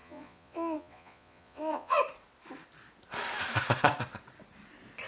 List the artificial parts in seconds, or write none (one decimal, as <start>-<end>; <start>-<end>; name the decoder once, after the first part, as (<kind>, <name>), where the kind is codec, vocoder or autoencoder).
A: 0.0-2.0 (vocoder, Vocos)